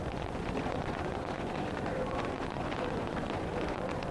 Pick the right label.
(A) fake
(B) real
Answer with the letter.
A